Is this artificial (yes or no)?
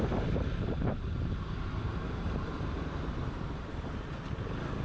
yes